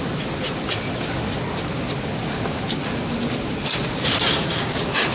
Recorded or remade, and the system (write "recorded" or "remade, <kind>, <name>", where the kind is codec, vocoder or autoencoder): recorded